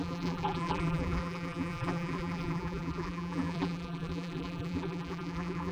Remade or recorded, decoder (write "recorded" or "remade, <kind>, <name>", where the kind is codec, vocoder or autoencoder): remade, vocoder, BigVGAN v2